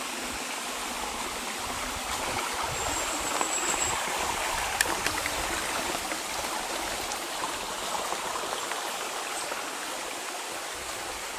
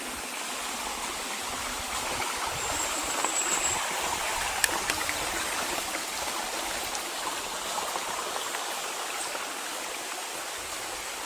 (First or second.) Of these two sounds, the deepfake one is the second